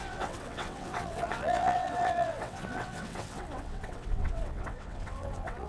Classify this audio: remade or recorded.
remade